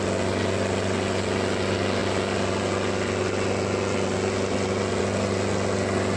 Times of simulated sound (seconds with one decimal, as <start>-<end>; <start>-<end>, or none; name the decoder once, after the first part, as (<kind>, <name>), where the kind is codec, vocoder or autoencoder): none